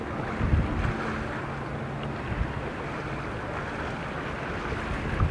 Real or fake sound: real